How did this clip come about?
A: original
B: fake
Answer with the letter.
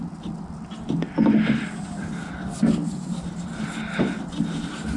A